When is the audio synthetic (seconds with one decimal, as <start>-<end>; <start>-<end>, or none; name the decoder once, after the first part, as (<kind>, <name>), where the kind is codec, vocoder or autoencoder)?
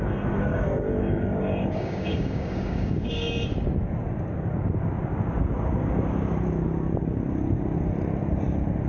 0.5-3.1 (codec, DAC)